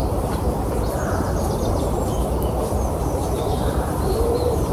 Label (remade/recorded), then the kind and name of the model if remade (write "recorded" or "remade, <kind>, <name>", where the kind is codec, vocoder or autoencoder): remade, vocoder, BigVGAN v2